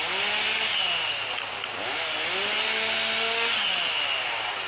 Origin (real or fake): real